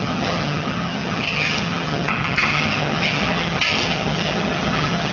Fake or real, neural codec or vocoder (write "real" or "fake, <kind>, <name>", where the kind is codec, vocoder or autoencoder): fake, vocoder, HiFi-GAN